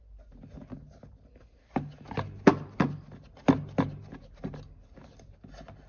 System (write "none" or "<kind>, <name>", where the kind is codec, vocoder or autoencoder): none